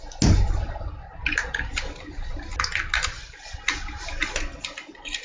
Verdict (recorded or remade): recorded